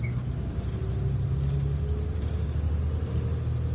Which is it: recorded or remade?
recorded